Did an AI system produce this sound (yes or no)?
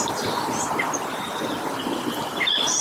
no